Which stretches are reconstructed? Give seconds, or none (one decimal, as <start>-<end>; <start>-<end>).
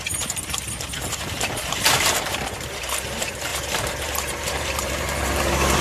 0.0-5.8